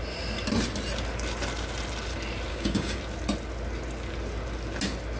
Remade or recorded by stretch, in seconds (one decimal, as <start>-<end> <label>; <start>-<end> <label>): 0.0-2.5 recorded; 2.5-3.0 remade; 3.0-5.2 recorded